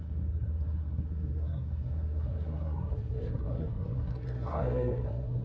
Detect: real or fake fake